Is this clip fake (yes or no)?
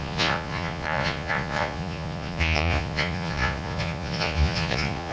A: yes